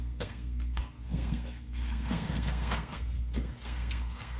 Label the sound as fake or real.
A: fake